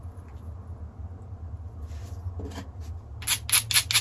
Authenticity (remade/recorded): recorded